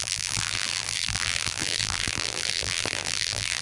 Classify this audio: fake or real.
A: fake